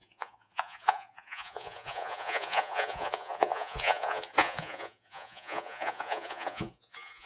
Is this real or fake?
fake